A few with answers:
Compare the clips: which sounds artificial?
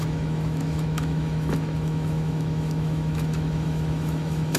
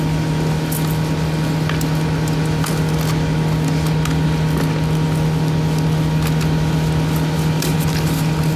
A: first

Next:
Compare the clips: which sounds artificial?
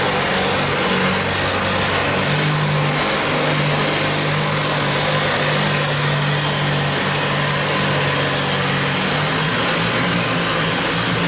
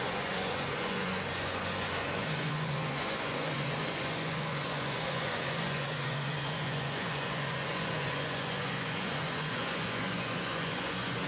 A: second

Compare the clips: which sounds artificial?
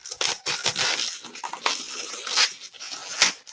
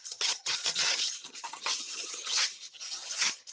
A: second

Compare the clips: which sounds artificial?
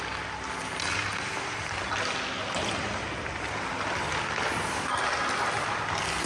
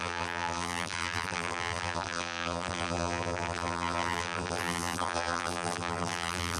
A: second